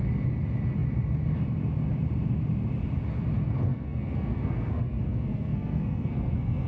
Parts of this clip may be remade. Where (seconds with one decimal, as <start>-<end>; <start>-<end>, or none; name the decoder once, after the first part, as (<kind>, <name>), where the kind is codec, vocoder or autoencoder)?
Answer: 3.7-6.7 (codec, SNAC)